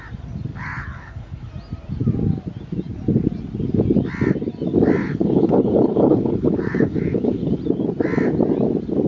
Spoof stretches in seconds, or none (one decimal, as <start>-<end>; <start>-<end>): 0.5-1.5; 5.0-7.6